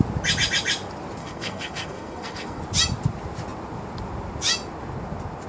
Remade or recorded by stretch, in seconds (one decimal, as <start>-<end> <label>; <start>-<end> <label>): 0.0-1.2 recorded; 1.2-2.6 remade; 2.6-5.5 recorded